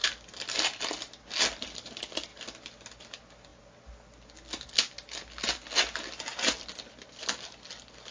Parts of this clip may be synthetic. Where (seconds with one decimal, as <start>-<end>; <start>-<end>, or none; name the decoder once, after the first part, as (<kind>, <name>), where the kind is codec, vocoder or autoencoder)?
none